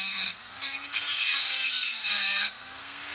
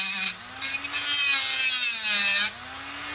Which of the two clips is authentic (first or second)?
second